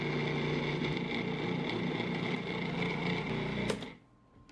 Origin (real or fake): real